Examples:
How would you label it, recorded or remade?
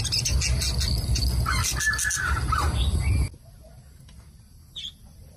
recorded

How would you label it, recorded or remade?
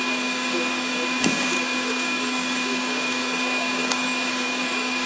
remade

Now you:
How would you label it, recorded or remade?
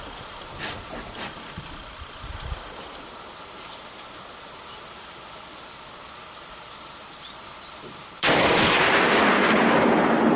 remade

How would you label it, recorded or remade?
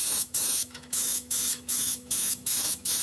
remade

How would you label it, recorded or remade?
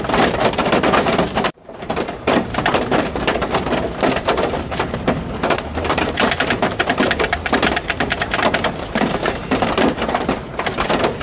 remade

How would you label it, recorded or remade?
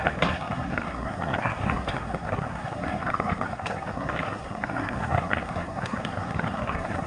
remade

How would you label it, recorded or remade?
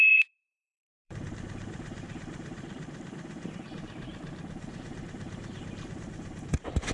remade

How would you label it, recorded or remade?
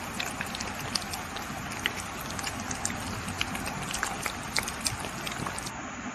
recorded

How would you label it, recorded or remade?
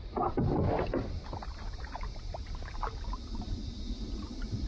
recorded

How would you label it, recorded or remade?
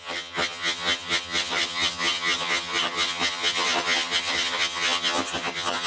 remade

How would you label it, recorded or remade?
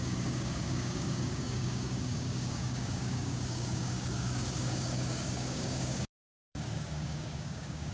remade